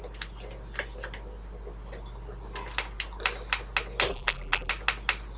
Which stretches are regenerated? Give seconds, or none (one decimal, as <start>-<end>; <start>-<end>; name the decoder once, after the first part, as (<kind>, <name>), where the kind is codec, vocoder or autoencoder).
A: 4.1-4.7 (vocoder, BigVGAN v2)